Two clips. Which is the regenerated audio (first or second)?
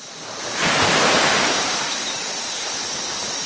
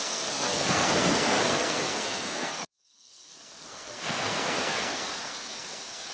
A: second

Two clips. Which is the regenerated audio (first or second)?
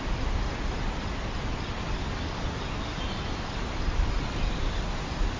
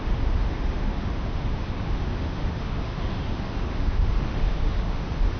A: second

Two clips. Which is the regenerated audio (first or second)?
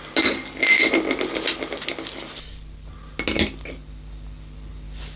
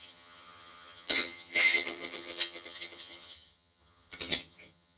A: second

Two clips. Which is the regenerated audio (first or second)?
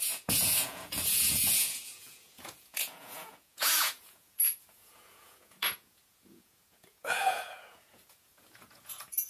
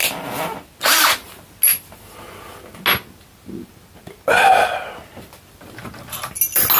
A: first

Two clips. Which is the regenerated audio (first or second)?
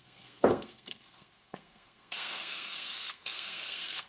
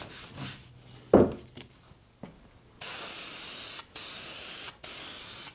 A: first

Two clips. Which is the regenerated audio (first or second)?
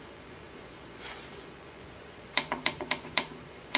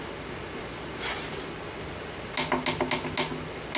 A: first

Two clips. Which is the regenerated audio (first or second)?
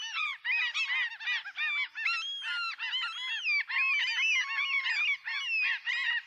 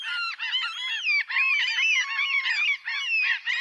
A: second